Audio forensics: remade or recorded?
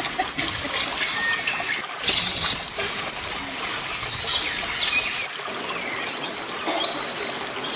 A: recorded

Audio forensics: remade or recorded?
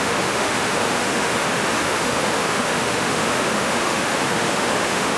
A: remade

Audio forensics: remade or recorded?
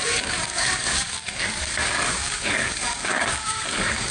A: remade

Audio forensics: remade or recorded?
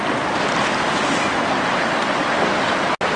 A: recorded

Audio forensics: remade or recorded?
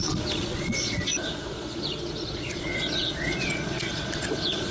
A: remade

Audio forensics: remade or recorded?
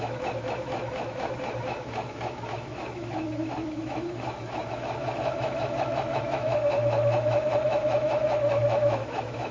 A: remade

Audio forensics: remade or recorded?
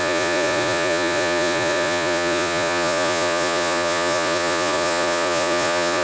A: remade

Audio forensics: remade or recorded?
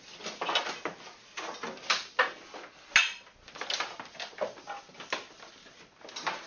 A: recorded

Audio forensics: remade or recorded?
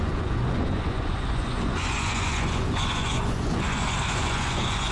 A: remade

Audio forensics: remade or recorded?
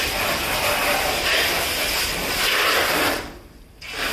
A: recorded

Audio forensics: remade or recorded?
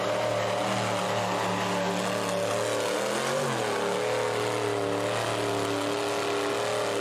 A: recorded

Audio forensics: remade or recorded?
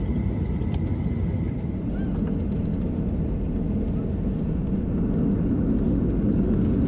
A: recorded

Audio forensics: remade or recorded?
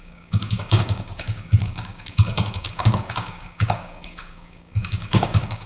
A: remade